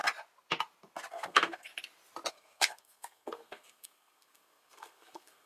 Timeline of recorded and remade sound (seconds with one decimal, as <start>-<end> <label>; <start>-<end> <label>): 0.0-1.1 recorded; 1.1-1.7 remade; 1.7-2.3 recorded; 2.3-5.5 remade